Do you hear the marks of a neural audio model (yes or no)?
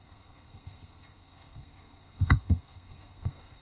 yes